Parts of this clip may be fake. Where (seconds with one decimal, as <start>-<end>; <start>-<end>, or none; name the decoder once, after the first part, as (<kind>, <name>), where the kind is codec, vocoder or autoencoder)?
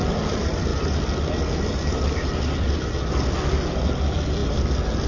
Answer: none